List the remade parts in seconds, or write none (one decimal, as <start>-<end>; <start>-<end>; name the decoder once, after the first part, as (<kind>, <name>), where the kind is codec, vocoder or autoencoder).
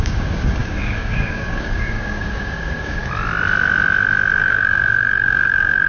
0.0-3.0 (codec, DAC); 4.4-5.9